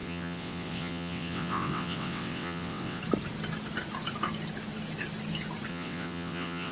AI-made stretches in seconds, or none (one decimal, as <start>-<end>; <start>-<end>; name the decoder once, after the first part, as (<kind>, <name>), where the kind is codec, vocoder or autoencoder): 0.0-3.0 (vocoder, WaveNeXt); 5.7-6.7